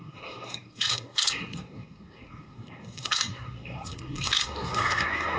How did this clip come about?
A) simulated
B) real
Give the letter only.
A